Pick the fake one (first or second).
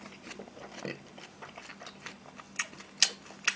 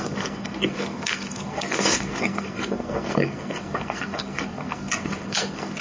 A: second